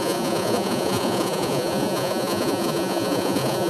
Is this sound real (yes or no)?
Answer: no